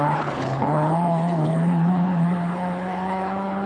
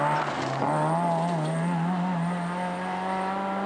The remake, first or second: first